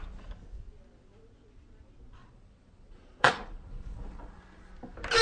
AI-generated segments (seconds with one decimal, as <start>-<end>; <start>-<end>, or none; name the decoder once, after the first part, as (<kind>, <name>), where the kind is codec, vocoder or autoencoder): 2.2-4.4 (vocoder, Vocos)